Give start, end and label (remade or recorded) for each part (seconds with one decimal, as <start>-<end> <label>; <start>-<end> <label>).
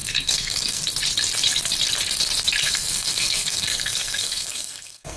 0.0-0.8 remade; 0.8-2.6 recorded; 2.6-5.2 remade